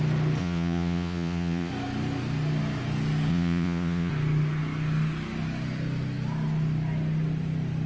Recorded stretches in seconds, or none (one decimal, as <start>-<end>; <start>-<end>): 0.0-0.4; 1.7-3.3; 4.1-7.9